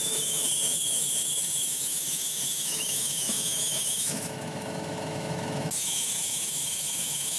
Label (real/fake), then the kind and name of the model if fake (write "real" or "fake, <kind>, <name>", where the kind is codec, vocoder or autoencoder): fake, autoencoder, DAC-VAE